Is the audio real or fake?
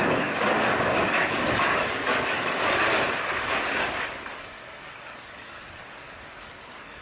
fake